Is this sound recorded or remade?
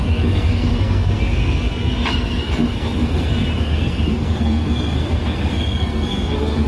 remade